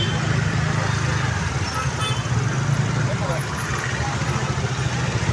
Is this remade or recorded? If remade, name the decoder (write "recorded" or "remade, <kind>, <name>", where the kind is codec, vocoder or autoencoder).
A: recorded